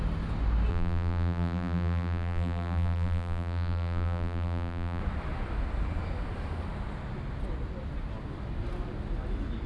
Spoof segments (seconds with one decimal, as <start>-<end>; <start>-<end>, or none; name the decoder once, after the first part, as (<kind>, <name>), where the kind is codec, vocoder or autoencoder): 0.7-5.0 (vocoder, BigVGAN v2)